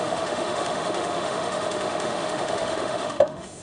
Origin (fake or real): fake